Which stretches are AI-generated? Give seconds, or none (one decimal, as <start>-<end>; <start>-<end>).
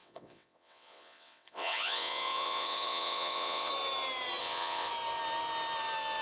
0.0-3.7; 4.4-4.9